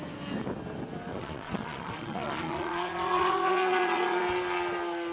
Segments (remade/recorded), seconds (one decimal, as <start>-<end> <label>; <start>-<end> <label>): 0.0-1.1 recorded; 1.1-4.2 remade; 4.2-5.1 recorded